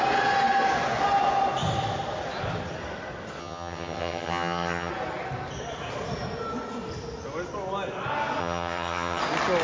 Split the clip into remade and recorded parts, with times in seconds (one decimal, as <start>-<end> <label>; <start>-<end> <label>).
0.0-3.4 recorded; 3.4-4.9 remade; 4.9-8.4 recorded; 8.4-9.2 remade; 9.2-9.6 recorded